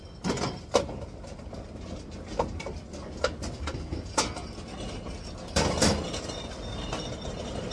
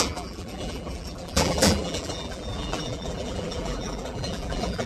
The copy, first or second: second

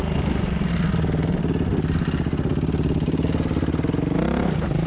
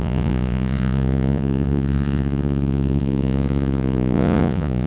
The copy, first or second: second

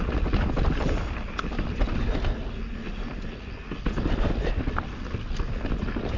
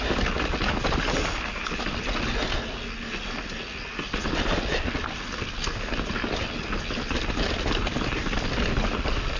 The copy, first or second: first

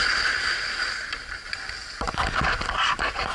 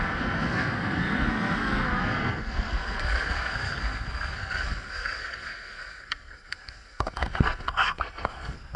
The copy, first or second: second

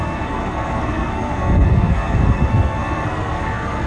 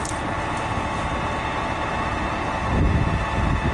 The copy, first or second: first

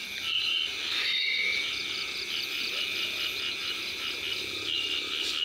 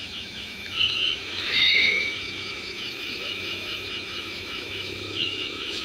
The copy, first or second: second